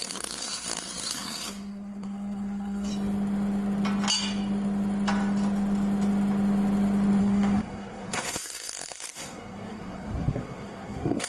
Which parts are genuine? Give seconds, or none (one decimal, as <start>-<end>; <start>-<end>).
2.9-7.2